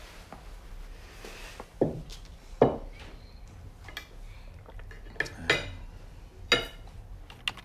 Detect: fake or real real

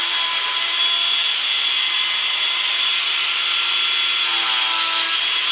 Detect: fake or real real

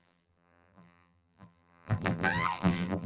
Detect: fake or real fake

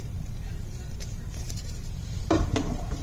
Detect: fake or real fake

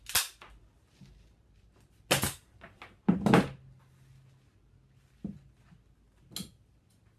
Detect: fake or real real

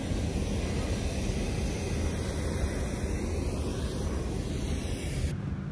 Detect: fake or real real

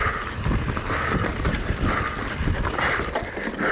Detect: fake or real real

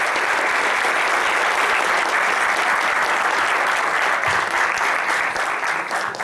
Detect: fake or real real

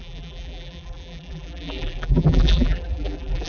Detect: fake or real fake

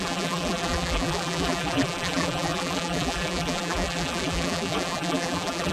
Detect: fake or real fake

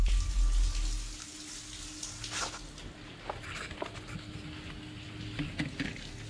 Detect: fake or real real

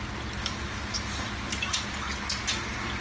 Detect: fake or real real